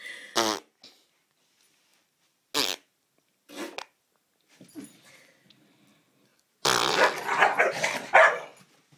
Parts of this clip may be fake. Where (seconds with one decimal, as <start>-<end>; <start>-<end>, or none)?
none